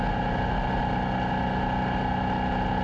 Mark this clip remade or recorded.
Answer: recorded